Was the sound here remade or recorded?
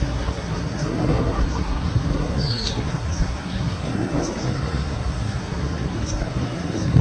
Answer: remade